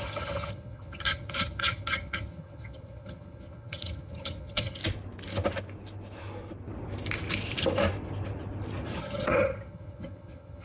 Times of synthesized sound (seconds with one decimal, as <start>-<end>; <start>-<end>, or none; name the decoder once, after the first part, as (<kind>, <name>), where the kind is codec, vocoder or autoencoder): 0.0-4.8 (vocoder, HiFi-GAN); 9.0-10.6